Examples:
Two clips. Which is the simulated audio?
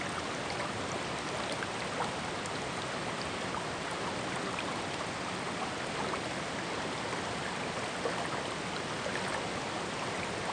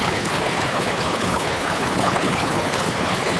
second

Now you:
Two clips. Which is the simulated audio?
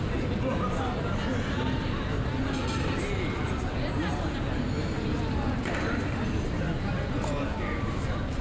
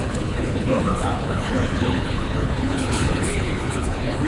second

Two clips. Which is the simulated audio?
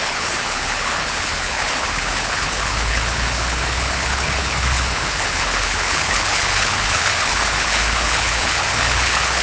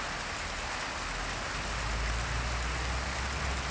first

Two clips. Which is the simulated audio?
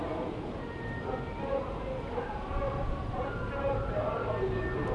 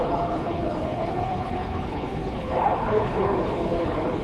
second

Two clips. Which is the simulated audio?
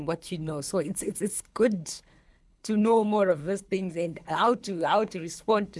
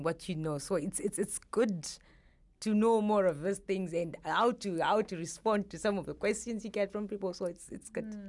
first